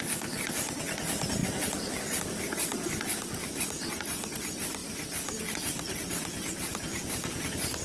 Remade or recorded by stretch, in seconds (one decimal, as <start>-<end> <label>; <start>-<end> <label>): 0.0-1.4 recorded; 1.4-2.2 remade; 2.2-7.8 recorded